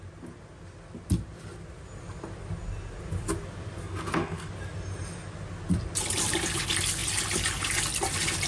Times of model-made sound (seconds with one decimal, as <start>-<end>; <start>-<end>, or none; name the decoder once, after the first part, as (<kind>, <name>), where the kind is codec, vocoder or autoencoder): 3.8-4.5 (codec, SNAC)